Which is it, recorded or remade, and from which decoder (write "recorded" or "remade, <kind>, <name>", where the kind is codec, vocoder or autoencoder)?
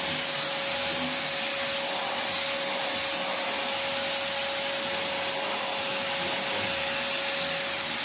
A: recorded